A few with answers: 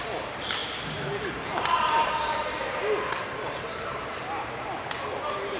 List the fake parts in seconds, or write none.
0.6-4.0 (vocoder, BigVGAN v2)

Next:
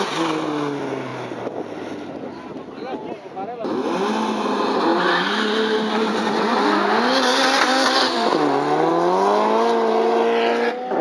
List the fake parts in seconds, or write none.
none